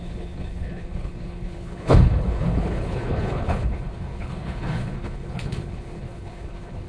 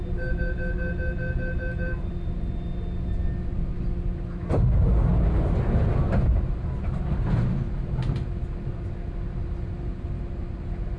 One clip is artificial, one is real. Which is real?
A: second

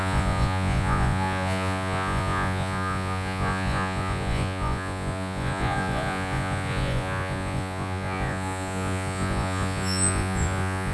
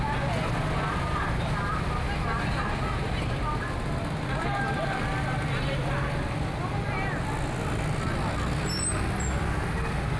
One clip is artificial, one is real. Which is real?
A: second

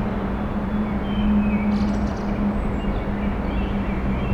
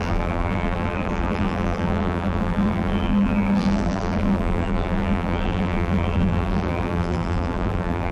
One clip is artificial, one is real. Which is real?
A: first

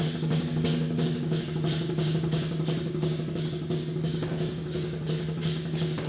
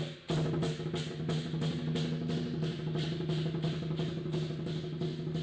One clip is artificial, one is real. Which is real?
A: second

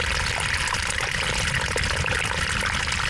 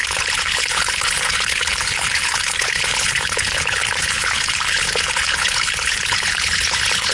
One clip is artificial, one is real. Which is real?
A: first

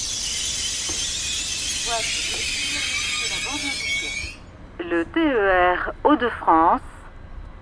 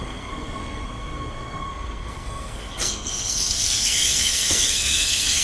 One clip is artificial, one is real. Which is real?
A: first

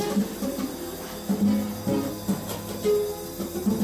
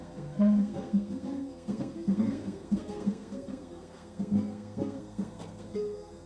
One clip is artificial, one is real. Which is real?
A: first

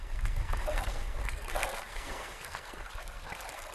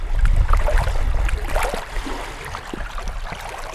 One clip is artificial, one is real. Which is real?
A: second